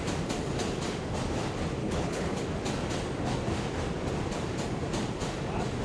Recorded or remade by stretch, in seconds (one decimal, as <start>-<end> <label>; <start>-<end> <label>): 0.0-1.8 recorded; 1.8-2.4 remade; 2.4-5.8 recorded